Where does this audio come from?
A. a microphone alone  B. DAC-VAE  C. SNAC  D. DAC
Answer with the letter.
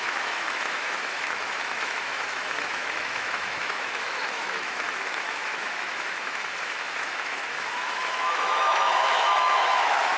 B